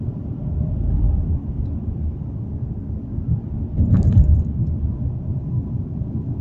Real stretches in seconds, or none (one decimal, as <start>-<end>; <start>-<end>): 1.2-3.1